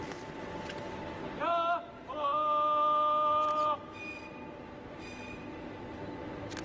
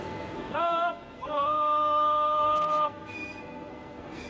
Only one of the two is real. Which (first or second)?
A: first